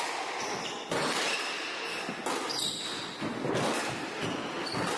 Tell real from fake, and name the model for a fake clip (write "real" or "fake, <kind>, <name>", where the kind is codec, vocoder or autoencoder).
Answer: real